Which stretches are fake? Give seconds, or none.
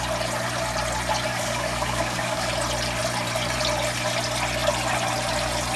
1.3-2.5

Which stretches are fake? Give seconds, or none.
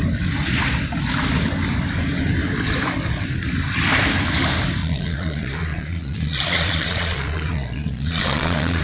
4.8-8.8